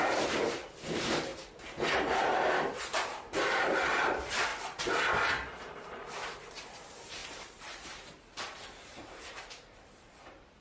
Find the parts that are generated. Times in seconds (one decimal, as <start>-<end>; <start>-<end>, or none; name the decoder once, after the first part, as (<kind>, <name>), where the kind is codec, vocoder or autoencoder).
0.0-4.5 (vocoder, BigVGAN v2); 5.3-10.6